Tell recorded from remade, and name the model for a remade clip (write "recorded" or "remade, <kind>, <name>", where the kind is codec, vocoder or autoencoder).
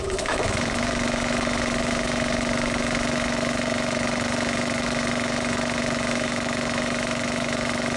remade, autoencoder, DAC-VAE